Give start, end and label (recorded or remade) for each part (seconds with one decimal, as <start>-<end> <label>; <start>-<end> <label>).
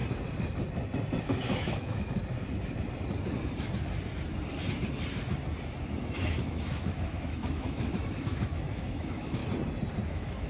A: 0.0-1.2 recorded; 1.2-2.2 remade; 2.2-6.0 recorded; 6.0-9.4 remade; 9.4-10.1 recorded; 10.1-10.5 remade